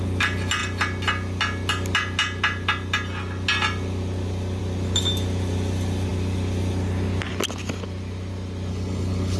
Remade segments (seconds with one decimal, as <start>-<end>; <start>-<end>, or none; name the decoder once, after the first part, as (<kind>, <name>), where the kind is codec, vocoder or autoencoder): 8.7-9.4 (codec, HILCodec)